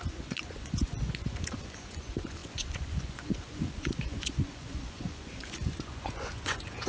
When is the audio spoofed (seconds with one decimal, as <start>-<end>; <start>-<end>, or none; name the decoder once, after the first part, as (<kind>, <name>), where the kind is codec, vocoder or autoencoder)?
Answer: 0.0-6.9 (vocoder, Vocos)